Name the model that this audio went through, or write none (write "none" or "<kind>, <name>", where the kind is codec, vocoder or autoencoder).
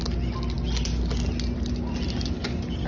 none